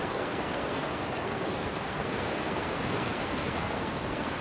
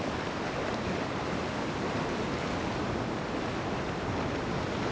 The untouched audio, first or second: second